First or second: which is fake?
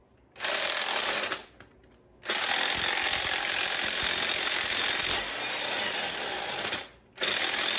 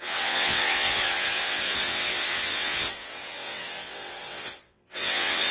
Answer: second